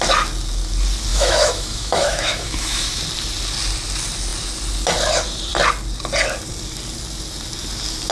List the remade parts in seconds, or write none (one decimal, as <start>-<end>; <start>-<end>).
1.1-3.0